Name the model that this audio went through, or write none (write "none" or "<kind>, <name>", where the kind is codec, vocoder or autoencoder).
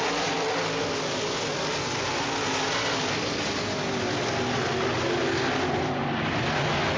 none